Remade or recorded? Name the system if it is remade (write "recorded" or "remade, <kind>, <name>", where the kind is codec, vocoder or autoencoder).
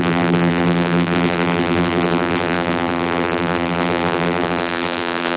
remade, vocoder, BigVGAN v2